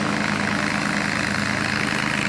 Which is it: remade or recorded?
recorded